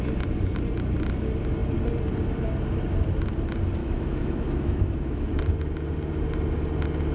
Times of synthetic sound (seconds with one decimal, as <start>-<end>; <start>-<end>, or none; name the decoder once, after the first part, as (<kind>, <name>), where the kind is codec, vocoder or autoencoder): 3.8-5.3 (autoencoder, DAC-VAE)